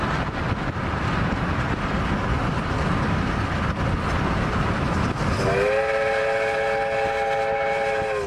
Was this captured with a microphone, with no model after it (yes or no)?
yes